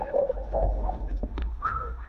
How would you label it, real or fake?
fake